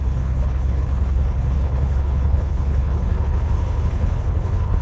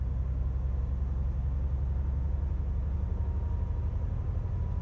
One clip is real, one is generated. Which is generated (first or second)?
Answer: first